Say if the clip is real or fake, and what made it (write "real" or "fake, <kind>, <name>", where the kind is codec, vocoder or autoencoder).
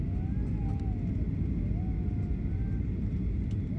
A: real